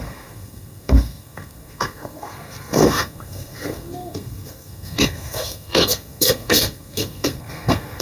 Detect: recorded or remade remade